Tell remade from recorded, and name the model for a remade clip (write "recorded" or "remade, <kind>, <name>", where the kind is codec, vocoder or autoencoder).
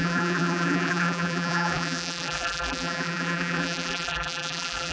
remade, vocoder, BigVGAN v2